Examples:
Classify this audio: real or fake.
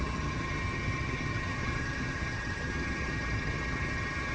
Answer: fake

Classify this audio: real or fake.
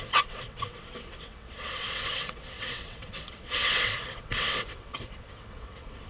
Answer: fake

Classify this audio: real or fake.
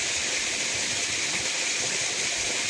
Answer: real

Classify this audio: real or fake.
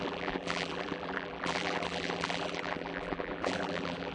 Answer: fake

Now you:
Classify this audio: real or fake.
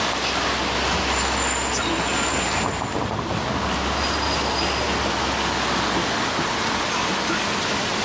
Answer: real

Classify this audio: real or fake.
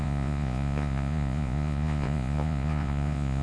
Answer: fake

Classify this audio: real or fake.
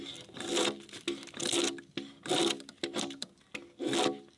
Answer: real